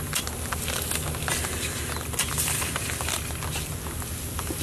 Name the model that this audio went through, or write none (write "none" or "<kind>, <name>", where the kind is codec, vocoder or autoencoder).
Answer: none